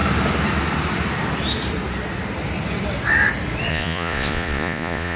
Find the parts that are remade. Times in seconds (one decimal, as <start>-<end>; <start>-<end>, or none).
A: 3.7-5.2